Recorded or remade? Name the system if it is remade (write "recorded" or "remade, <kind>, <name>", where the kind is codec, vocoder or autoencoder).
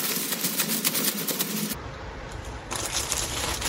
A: remade, vocoder, BigVGAN v2